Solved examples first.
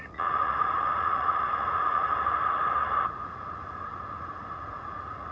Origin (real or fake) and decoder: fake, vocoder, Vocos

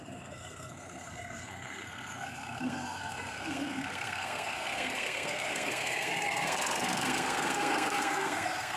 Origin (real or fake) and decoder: fake, codec, SNAC